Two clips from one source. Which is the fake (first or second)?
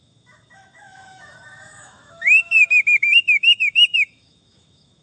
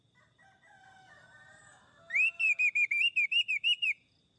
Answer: first